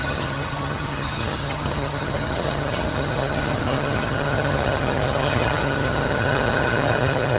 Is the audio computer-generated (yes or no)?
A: yes